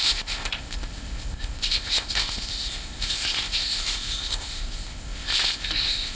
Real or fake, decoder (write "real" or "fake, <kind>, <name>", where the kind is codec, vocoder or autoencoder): fake, codec, ZipCodec